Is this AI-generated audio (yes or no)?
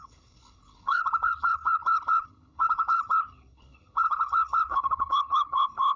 yes